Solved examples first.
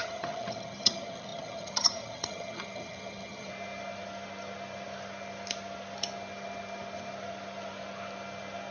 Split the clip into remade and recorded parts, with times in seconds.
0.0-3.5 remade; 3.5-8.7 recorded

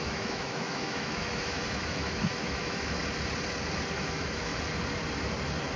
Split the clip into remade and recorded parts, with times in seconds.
0.0-3.0 remade; 3.0-4.0 recorded; 4.0-4.5 remade; 4.5-5.8 recorded

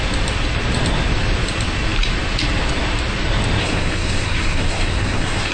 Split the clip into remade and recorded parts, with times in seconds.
0.0-3.6 recorded; 3.6-5.5 remade

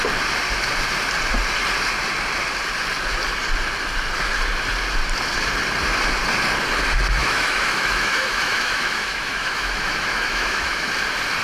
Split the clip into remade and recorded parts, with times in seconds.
0.0-7.2 recorded; 7.2-10.9 remade; 10.9-11.4 recorded

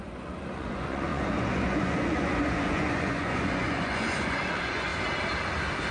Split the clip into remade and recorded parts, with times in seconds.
0.0-4.9 remade; 4.9-5.9 recorded

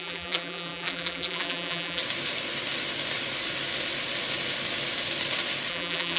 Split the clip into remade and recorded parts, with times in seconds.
0.0-2.0 remade; 2.0-5.7 recorded; 5.7-6.2 remade